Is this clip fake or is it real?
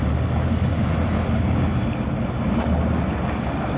real